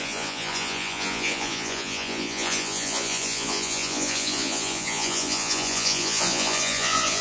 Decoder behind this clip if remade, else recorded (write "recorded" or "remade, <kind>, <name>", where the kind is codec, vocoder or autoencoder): remade, vocoder, Vocos